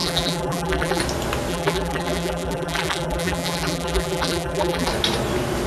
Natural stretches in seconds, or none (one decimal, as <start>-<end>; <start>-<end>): 1.0-1.5; 4.9-5.7